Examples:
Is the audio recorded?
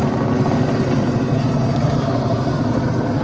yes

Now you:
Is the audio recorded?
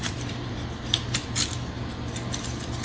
yes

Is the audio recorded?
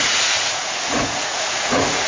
no